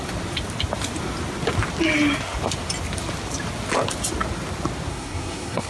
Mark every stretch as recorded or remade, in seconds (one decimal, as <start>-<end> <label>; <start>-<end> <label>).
0.0-4.9 recorded; 4.9-5.7 remade